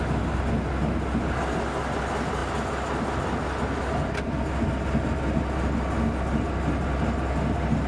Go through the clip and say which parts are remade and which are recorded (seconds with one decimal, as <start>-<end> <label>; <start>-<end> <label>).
0.0-7.9 recorded